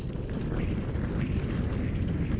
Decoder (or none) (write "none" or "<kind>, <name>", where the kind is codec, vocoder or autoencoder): none